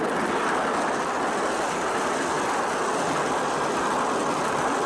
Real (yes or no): yes